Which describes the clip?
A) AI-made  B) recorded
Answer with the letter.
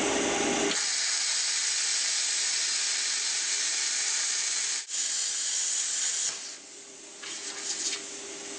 B